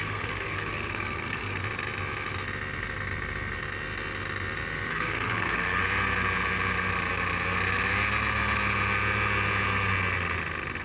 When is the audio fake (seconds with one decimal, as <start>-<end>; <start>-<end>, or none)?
0.0-1.6; 4.9-5.8